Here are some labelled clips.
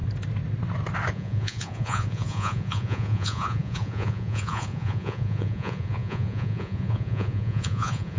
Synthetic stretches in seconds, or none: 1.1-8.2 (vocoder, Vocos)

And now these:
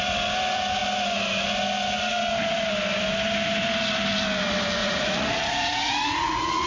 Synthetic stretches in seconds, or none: 4.8-6.7 (vocoder, Vocos)

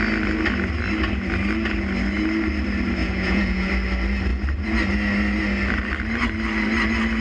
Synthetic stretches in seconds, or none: 3.0-3.7 (vocoder, Vocos)

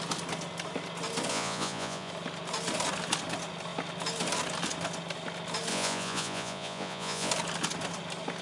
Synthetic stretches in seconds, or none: 1.3-2.1 (vocoder, Vocos); 5.7-7.3

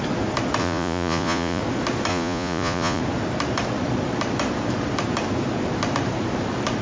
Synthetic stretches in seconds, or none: 0.6-1.6 (vocoder, Vocos); 2.1-3.0

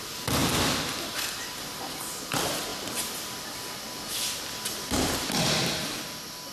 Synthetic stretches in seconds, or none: none